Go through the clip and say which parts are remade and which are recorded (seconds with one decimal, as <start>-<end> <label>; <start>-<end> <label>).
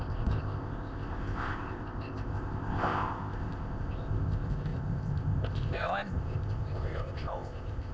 0.0-7.9 remade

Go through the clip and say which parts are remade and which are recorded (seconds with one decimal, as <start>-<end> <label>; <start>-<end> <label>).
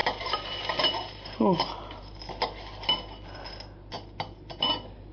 0.0-5.1 recorded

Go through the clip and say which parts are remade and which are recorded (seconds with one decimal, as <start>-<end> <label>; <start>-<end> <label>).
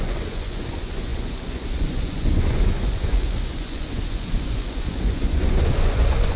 0.0-6.4 remade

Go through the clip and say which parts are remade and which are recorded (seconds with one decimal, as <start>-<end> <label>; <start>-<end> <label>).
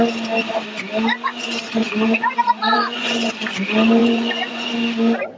0.0-1.8 recorded; 1.8-3.3 remade; 3.3-4.0 recorded; 4.0-4.7 remade; 4.7-5.4 recorded